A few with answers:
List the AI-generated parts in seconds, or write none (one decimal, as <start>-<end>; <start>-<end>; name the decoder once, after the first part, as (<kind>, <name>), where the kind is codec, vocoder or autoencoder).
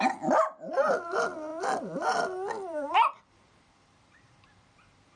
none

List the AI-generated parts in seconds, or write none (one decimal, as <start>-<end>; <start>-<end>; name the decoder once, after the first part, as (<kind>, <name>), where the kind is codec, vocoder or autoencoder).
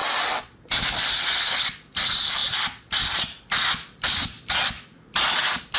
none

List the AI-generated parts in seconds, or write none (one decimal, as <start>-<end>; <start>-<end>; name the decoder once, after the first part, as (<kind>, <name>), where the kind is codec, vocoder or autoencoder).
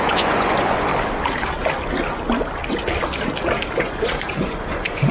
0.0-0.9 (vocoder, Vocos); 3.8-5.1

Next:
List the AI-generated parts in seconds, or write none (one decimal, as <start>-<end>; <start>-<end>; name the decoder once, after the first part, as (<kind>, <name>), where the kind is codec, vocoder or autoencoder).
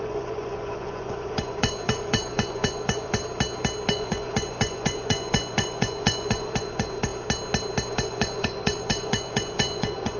0.0-3.2 (vocoder, Vocos); 3.9-7.1; 7.9-10.2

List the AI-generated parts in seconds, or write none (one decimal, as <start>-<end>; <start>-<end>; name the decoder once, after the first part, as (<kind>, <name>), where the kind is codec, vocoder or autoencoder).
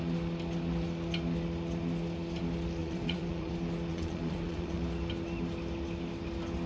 2.8-3.5 (vocoder, Vocos); 3.9-4.8